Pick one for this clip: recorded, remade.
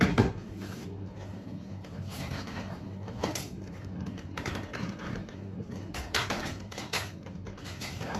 remade